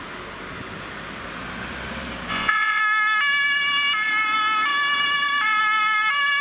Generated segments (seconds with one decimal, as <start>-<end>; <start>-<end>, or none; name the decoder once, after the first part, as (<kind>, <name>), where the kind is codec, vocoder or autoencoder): 2.3-2.8 (vocoder, Vocos)